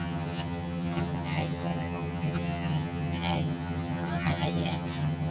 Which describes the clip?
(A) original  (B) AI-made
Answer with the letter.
B